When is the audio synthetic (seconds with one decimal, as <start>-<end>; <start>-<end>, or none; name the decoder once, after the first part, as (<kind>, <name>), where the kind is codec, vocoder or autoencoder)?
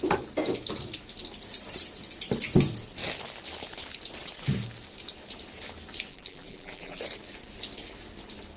6.1-7.0 (vocoder, BigVGAN v2)